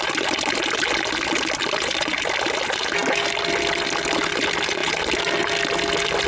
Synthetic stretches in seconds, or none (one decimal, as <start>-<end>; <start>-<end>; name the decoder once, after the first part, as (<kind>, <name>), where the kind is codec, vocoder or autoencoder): none